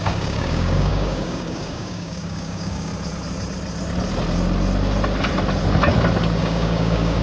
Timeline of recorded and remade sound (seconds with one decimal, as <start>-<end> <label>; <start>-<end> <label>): 0.0-2.9 remade; 2.9-6.4 recorded; 6.4-7.2 remade